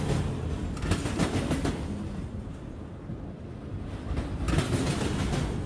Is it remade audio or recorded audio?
recorded